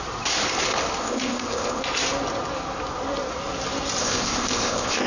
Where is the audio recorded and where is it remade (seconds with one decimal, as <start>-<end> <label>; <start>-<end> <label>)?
0.0-1.0 recorded; 1.0-1.8 remade; 1.8-4.0 recorded; 4.0-5.1 remade